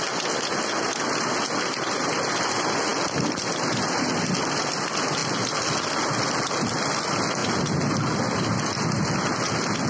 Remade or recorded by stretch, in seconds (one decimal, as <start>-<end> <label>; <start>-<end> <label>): 0.0-9.9 recorded